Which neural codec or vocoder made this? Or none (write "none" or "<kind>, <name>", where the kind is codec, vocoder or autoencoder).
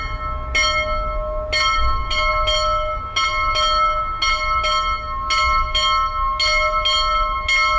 none